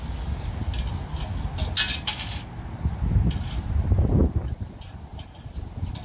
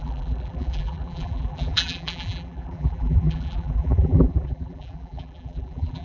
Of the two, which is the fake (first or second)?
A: second